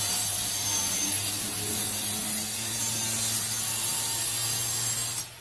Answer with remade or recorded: recorded